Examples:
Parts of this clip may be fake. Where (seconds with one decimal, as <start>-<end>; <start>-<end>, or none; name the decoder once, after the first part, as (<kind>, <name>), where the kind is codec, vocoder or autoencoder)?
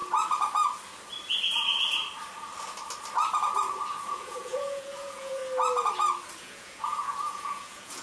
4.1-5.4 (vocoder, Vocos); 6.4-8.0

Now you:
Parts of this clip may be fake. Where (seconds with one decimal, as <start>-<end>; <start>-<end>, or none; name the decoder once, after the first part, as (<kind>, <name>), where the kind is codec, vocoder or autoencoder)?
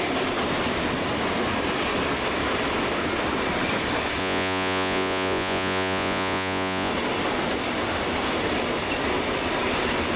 4.2-6.9 (vocoder, Vocos)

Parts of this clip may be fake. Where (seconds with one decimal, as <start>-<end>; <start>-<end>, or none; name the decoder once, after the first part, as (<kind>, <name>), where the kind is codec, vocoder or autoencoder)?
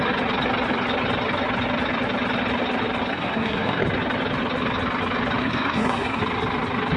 3.1-3.8 (codec, SNAC); 5.4-6.2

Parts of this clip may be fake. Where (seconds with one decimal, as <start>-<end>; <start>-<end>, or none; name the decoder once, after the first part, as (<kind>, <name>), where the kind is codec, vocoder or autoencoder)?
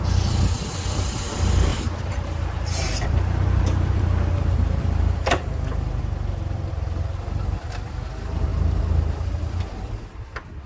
1.7-6.0 (vocoder, BigVGAN v2); 8.5-9.4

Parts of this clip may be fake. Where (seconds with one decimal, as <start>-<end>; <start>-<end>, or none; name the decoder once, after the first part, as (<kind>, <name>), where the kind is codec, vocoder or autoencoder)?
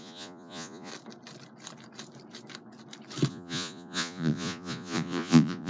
0.0-0.9 (vocoder, Vocos); 3.3-5.7